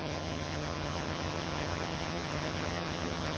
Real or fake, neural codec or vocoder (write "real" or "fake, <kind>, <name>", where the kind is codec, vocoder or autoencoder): fake, vocoder, HiFi-GAN